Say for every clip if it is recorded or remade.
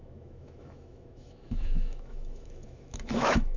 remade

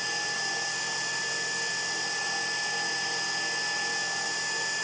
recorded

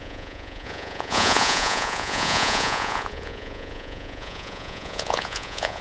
remade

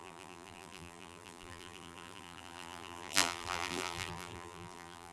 remade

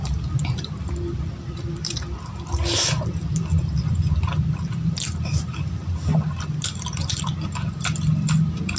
remade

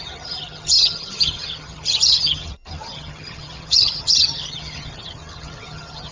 remade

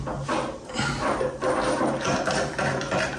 recorded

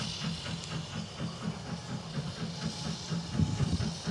recorded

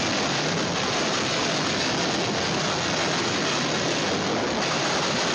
recorded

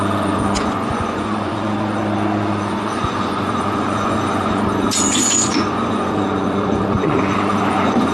remade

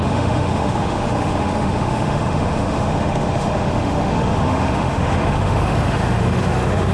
remade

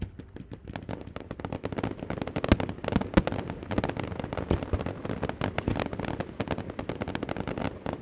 recorded